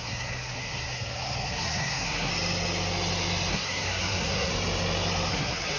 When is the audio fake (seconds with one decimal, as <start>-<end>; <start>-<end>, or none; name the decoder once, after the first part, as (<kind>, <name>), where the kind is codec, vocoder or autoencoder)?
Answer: 0.0-2.3 (codec, SNAC); 3.5-4.5; 5.3-5.8